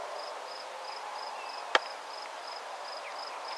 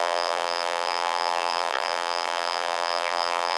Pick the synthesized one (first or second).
second